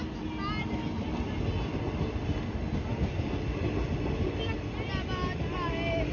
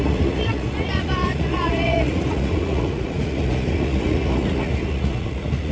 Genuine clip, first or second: first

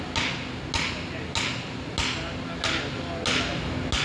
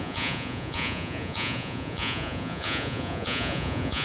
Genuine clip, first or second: first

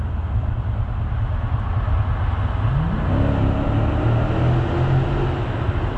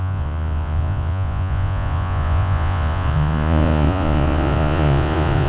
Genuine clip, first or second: first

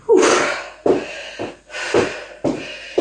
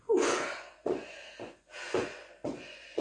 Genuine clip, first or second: first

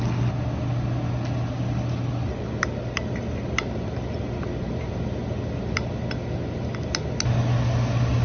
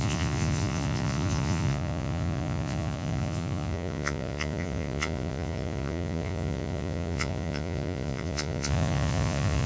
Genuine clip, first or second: first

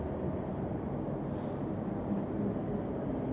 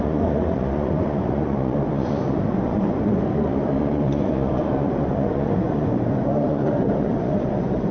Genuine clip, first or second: first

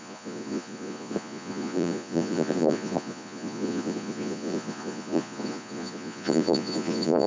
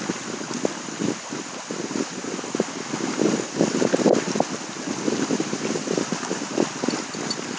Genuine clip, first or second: second